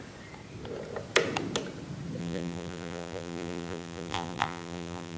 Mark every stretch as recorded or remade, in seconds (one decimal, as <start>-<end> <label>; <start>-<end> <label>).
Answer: 0.0-2.2 recorded; 2.2-5.2 remade